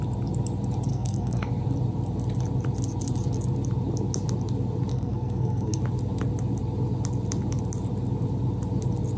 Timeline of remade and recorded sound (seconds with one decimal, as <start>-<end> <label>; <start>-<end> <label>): 0.0-0.9 recorded; 0.9-1.5 remade; 1.5-4.9 recorded; 4.9-5.8 remade; 5.8-9.2 recorded